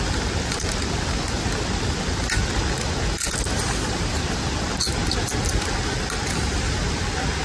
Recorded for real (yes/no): yes